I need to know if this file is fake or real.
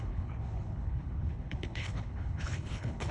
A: fake